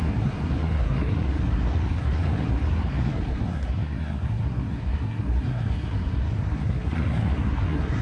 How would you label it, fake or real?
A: fake